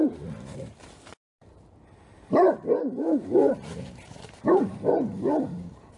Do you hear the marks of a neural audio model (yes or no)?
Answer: yes